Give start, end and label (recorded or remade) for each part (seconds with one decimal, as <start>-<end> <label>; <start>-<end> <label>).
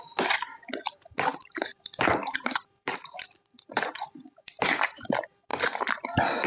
0.0-1.3 recorded; 1.3-5.0 remade; 5.0-6.5 recorded